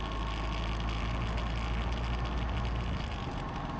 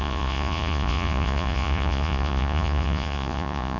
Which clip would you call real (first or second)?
first